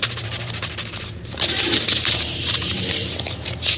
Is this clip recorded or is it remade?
remade